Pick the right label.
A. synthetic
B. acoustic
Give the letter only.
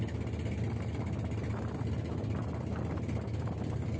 B